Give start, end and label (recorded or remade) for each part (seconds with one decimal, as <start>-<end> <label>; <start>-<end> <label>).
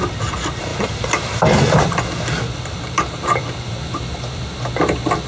0.0-5.3 remade